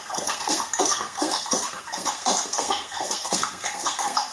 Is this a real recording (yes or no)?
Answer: no